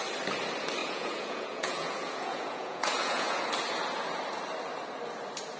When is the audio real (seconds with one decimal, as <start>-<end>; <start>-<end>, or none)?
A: 0.0-0.8; 3.4-5.6